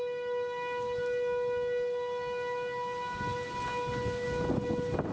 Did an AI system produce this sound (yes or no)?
no